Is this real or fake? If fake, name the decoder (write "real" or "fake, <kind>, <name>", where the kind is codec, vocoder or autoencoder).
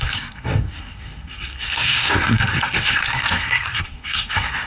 fake, codec, SNAC